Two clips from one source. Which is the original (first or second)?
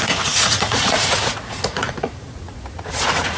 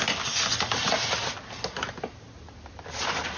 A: second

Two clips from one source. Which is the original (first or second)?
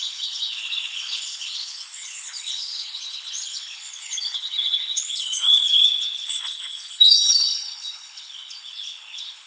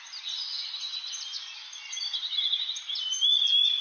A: second